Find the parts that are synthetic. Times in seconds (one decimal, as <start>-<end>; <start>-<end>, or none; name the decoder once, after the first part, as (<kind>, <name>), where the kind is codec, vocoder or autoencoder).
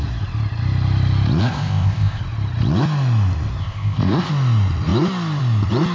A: 1.4-2.2 (codec, ZipCodec); 3.6-4.3